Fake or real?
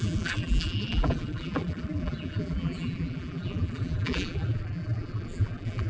fake